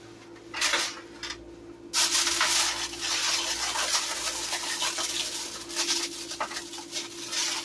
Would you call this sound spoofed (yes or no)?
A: no